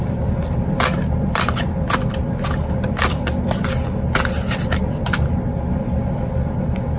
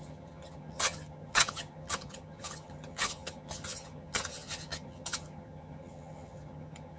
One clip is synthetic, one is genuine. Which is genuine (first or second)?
first